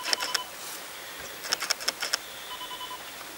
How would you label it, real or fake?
real